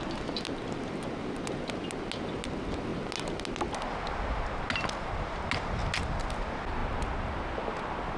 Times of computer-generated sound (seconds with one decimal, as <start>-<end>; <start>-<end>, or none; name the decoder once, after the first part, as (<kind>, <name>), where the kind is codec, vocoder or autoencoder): none